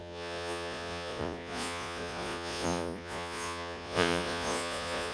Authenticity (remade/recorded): remade